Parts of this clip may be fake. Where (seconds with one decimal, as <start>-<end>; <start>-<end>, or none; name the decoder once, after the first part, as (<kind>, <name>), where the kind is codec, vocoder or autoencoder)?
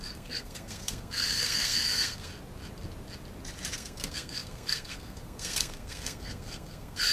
0.0-2.3 (codec, SNAC); 3.7-7.1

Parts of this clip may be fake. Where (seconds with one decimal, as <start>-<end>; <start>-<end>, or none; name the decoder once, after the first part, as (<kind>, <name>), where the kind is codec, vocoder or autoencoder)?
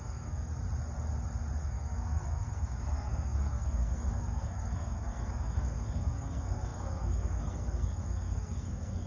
0.0-0.5 (codec, SNAC); 1.6-9.1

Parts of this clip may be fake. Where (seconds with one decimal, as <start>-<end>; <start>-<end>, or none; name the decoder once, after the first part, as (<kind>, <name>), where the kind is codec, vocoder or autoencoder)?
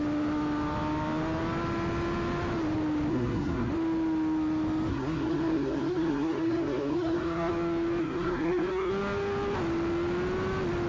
3.1-3.7 (codec, SNAC); 4.9-7.5; 8.0-8.9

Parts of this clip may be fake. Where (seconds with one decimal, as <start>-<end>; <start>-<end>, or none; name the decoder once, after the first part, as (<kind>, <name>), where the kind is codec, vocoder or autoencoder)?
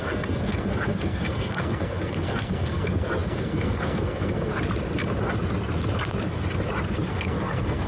0.0-4.5 (codec, SNAC); 7.1-7.9